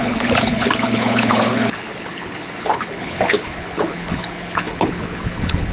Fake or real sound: fake